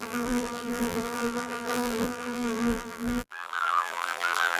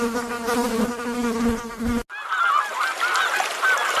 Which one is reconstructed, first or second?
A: first